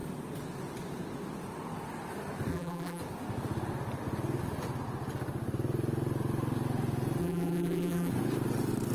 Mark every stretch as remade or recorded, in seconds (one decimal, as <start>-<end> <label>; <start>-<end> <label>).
0.0-2.5 recorded; 2.5-3.0 remade; 3.0-7.2 recorded; 7.2-8.1 remade; 8.1-8.9 recorded